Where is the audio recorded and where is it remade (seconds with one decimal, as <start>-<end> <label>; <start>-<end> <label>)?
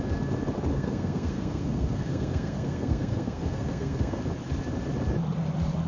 0.0-0.7 recorded; 0.7-4.2 remade; 4.2-5.9 recorded